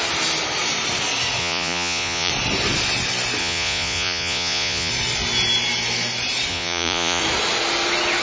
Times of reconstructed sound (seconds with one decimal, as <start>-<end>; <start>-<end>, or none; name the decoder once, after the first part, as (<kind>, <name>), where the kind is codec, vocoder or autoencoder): 1.4-2.3 (vocoder, Vocos); 3.4-4.9; 6.5-7.2